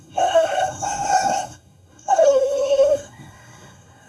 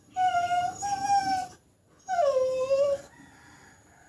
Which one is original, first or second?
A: second